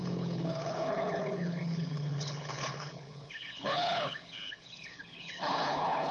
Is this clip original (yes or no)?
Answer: no